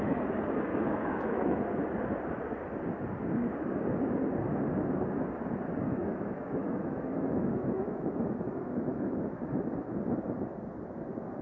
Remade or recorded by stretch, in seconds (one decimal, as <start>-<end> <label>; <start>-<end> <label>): 0.0-0.7 recorded; 0.7-1.6 remade; 1.6-5.9 recorded; 5.9-9.4 remade; 9.4-11.4 recorded